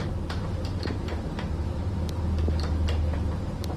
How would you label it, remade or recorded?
recorded